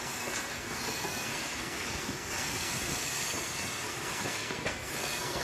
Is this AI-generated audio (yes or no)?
yes